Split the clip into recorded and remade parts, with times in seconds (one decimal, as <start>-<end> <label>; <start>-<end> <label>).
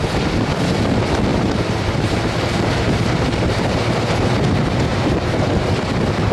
0.0-1.3 recorded; 1.3-4.3 remade; 4.3-4.9 recorded; 4.9-5.5 remade; 5.5-6.3 recorded